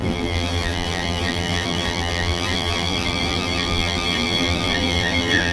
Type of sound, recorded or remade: remade